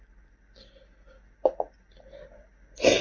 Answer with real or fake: real